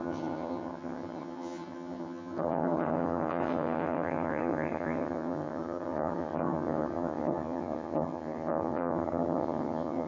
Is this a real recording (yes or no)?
no